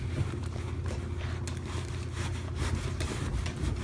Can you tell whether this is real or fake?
real